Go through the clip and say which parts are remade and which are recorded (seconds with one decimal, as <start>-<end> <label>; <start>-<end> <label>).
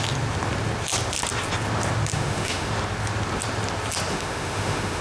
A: 0.0-2.1 recorded; 2.1-2.7 remade; 2.7-4.1 recorded; 4.1-5.0 remade